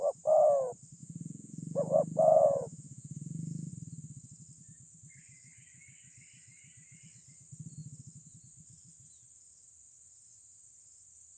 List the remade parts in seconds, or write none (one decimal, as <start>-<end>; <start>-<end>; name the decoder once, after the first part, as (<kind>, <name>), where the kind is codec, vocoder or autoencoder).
1.0-3.7 (vocoder, Vocos)